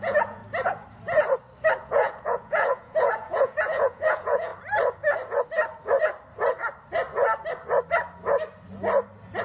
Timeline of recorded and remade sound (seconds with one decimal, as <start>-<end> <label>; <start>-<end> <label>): 0.0-0.4 remade; 0.4-1.8 recorded; 1.8-4.5 remade; 4.5-9.4 recorded